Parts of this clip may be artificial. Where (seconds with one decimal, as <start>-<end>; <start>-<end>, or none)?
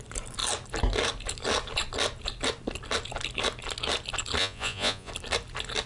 4.4-5.1